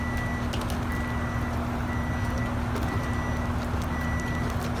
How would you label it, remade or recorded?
recorded